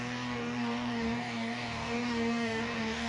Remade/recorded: remade